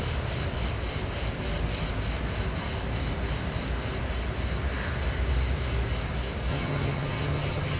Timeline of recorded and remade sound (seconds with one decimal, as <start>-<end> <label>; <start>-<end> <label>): 0.0-6.5 recorded; 6.5-7.8 remade